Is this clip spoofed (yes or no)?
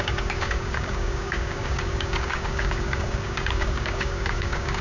yes